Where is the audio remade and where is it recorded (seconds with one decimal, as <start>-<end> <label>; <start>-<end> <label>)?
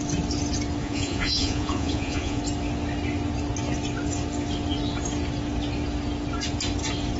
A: 0.0-0.8 recorded; 0.8-2.4 remade; 2.4-7.2 recorded